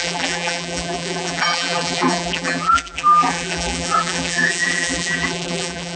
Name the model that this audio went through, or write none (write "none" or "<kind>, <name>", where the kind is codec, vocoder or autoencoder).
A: vocoder, BigVGAN v2